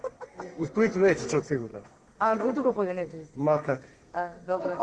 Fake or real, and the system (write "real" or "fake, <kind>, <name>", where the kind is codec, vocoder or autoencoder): fake, codec, SNAC